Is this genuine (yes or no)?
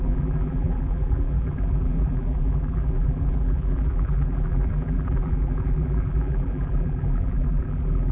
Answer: no